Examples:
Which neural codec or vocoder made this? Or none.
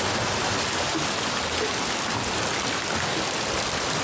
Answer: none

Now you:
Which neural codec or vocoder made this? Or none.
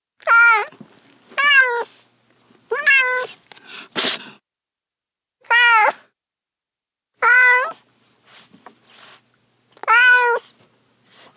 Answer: none